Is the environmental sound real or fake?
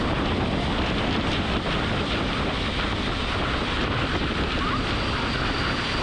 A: real